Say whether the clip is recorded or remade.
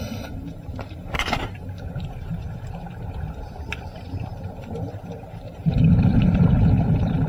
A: remade